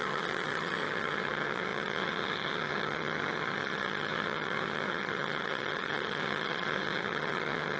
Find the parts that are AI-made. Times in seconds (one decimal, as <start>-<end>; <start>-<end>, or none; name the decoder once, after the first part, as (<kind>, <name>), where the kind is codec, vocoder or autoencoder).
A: 0.0-7.8 (vocoder, HiFi-GAN)